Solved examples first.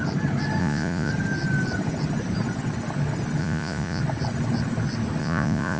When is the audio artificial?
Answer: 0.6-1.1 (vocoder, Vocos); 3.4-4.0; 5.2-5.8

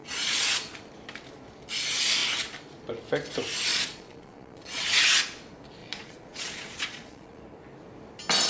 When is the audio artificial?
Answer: 0.0-0.7 (vocoder, Vocos); 3.7-5.0; 5.8-7.4

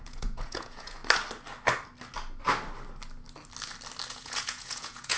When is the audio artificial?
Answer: 0.0-1.0 (vocoder, Vocos); 4.1-5.2

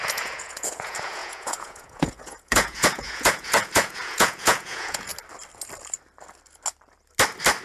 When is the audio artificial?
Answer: 0.0-5.1 (vocoder, Vocos)

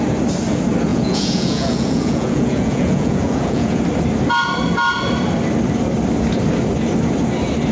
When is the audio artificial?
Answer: 0.9-3.8 (vocoder, Vocos)